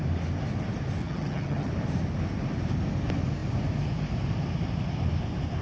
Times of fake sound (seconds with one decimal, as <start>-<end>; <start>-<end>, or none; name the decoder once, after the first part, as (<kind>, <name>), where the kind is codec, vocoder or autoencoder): 1.0-1.7 (vocoder, HiFi-GAN)